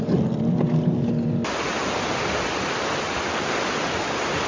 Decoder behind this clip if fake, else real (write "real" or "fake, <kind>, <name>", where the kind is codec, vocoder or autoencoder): real